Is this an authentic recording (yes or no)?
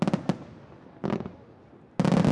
yes